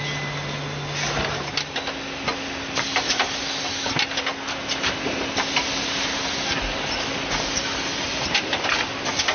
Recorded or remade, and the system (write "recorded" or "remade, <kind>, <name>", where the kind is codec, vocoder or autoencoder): recorded